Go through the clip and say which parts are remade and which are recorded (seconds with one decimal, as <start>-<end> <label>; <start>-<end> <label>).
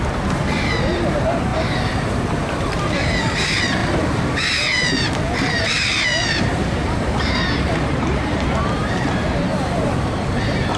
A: 0.0-10.8 remade